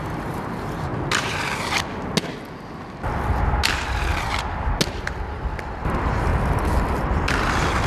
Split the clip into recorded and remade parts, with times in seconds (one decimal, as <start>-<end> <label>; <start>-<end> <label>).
0.0-0.9 remade; 0.9-5.6 recorded; 5.6-6.3 remade; 6.3-7.9 recorded